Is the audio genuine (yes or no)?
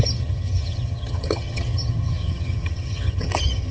no